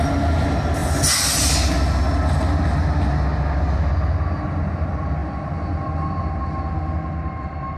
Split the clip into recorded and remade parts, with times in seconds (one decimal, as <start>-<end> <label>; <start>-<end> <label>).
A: 0.0-5.2 recorded; 5.2-6.2 remade; 6.2-7.8 recorded